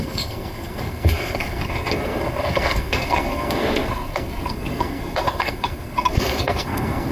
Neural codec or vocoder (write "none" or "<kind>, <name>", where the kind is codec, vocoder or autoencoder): codec, SNAC